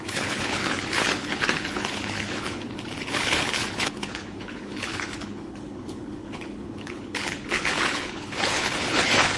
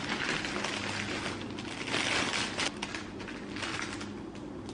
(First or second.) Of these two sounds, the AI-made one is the first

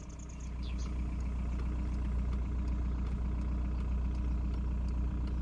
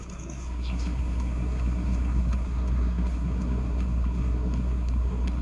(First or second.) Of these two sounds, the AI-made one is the second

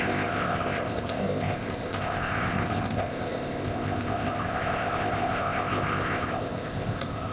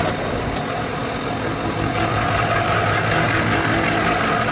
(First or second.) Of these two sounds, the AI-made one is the first